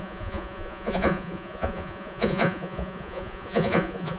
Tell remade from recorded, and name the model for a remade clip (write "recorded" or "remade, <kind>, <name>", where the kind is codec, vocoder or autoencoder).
remade, vocoder, Vocos